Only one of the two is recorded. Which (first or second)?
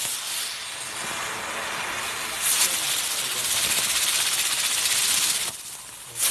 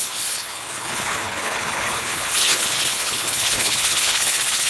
first